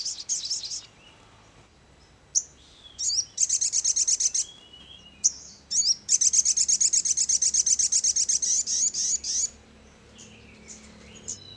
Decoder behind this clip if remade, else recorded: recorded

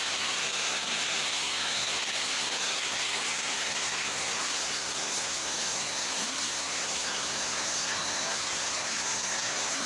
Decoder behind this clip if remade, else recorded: remade, codec, SNAC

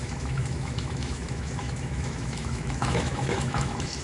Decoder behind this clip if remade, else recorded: remade, autoencoder, DAC-VAE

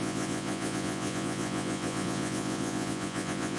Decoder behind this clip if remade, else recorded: remade, vocoder, Vocos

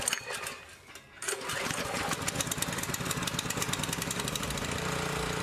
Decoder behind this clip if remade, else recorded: recorded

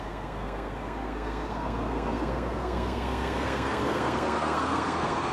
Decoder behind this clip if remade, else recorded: remade, codec, SNAC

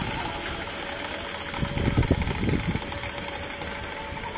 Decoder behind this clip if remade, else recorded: recorded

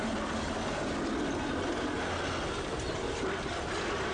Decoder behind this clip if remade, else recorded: recorded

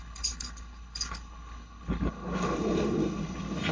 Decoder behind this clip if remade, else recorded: remade, codec, HILCodec